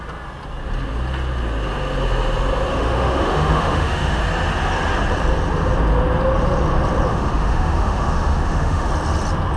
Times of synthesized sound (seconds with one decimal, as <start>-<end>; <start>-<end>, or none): 2.7-4.2; 7.1-8.9